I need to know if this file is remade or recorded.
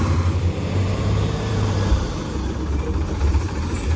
remade